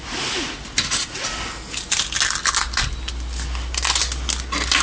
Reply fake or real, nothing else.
real